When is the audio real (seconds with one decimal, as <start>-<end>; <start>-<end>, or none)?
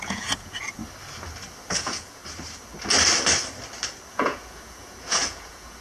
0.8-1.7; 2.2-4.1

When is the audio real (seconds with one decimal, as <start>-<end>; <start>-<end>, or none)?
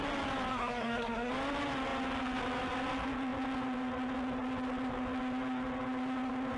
0.0-0.5; 1.3-6.6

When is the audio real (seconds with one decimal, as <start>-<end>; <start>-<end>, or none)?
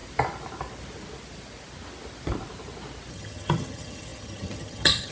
0.0-3.1